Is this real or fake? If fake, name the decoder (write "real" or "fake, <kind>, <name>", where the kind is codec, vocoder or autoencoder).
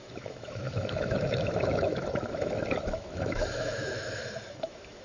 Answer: fake, autoencoder, DAC-VAE